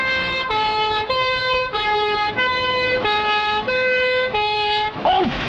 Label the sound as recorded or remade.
remade